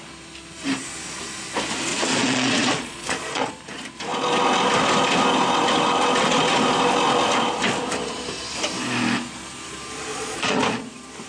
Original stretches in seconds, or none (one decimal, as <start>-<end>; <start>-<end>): 0.0-1.9; 3.5-10.1; 10.6-11.3